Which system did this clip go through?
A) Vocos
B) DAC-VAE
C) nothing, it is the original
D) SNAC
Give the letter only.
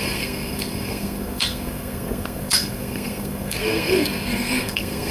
D